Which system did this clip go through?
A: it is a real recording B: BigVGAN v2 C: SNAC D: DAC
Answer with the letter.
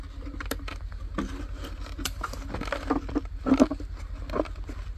A